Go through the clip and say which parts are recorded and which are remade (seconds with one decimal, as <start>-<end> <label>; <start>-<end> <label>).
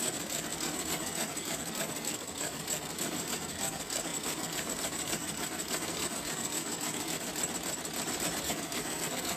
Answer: 0.0-7.3 remade; 7.3-8.4 recorded; 8.4-9.4 remade